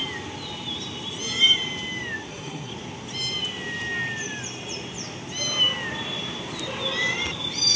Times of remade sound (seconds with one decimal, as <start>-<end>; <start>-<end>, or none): 2.3-2.7